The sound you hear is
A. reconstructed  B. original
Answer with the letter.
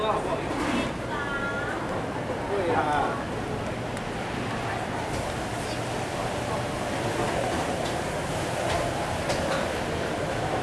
B